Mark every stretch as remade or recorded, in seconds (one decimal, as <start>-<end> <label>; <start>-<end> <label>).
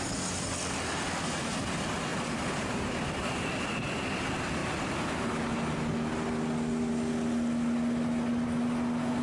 0.0-2.1 recorded; 2.1-3.1 remade; 3.1-9.2 recorded